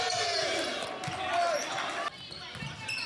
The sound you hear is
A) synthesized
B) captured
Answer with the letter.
B